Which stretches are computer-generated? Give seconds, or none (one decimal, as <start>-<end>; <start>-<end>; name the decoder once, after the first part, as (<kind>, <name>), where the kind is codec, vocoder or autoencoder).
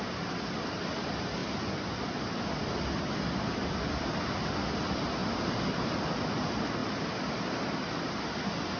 5.2-5.9 (vocoder, BigVGAN v2); 6.8-8.2